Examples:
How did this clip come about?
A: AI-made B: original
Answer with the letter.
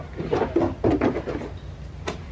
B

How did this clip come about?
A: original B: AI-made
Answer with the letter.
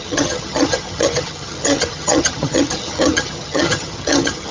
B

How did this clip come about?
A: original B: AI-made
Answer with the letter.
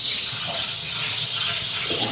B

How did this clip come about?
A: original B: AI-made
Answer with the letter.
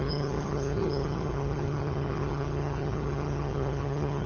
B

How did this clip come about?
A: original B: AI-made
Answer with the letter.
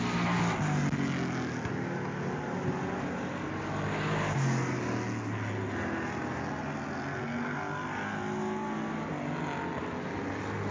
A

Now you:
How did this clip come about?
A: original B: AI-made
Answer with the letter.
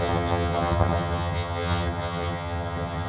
B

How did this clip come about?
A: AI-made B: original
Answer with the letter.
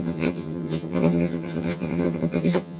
A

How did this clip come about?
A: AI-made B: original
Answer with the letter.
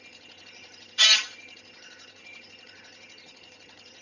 A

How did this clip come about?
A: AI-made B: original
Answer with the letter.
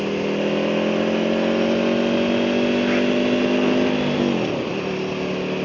B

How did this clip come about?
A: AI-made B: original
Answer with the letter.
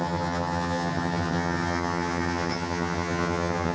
A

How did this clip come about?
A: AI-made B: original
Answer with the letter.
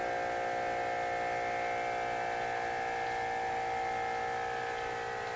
B